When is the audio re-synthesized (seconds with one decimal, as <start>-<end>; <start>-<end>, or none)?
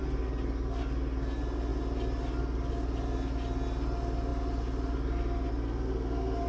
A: none